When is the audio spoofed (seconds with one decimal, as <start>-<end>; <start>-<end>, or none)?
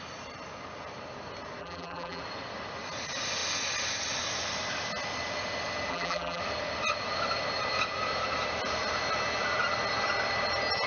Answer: 1.6-2.2; 5.9-6.4